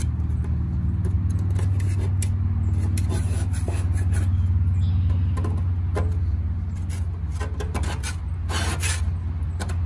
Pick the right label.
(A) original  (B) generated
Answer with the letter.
A